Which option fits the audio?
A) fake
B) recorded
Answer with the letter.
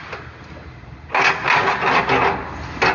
B